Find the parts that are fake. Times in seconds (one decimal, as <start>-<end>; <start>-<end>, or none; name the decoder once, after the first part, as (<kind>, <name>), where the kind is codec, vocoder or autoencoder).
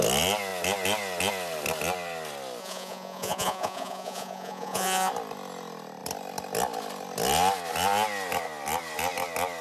2.6-5.1 (vocoder, Vocos)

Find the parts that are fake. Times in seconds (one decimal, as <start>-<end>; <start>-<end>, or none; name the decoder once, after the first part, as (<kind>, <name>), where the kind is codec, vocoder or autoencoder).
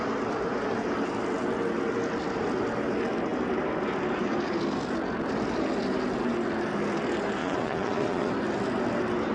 7.4-8.3 (vocoder, Vocos)